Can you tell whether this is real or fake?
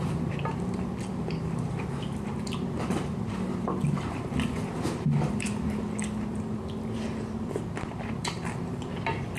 fake